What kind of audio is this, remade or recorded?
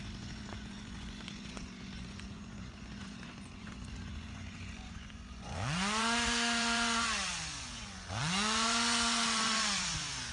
remade